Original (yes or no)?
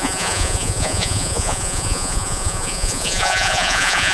no